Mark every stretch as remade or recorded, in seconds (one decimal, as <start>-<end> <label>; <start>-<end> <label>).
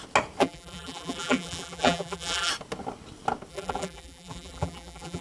0.0-0.4 recorded; 0.4-2.5 remade; 2.5-3.5 recorded; 3.5-5.2 remade